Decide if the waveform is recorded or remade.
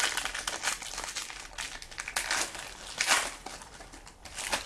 recorded